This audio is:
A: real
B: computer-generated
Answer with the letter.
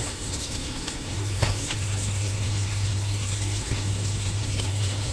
B